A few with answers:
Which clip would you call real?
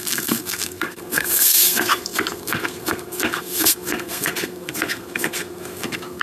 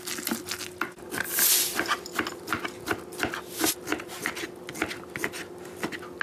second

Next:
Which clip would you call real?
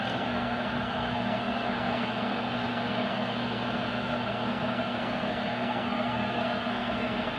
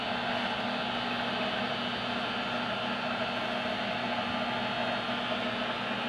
second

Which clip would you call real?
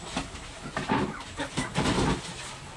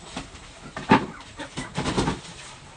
first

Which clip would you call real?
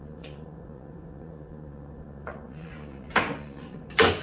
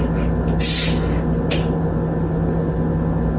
second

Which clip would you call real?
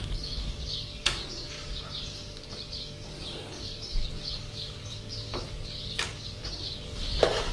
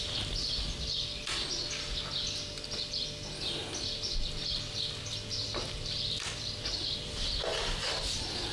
second